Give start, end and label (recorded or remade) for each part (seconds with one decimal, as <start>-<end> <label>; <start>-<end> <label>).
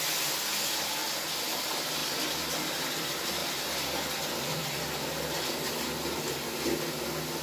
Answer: 0.0-7.4 recorded